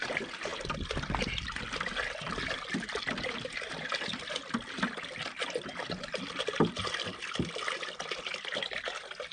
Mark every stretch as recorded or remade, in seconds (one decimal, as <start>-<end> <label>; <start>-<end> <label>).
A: 0.0-9.3 recorded